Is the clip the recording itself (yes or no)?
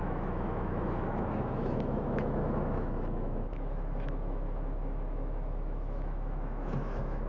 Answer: no